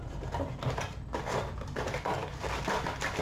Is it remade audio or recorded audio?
recorded